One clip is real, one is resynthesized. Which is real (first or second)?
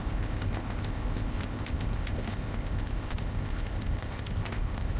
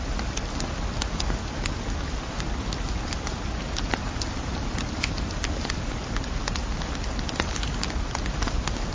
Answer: second